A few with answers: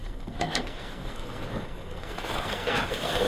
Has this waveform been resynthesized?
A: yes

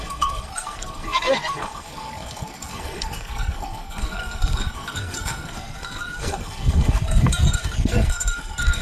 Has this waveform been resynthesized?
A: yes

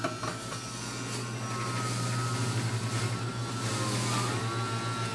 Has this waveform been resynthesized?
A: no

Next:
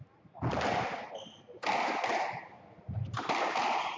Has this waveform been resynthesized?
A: no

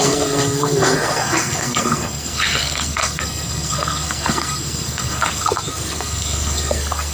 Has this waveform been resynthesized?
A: yes